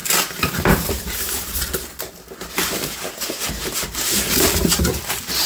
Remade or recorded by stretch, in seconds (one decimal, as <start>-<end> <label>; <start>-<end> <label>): 0.0-5.5 remade